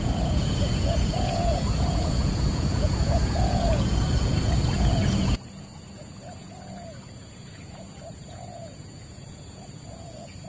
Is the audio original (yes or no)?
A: no